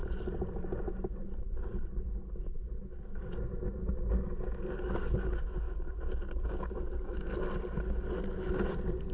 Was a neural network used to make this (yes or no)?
no